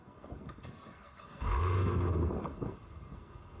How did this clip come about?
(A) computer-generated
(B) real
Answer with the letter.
A